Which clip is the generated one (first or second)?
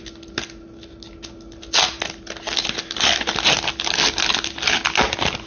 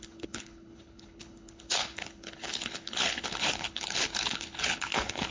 second